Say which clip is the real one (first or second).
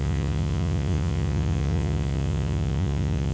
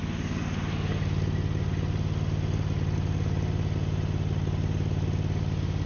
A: second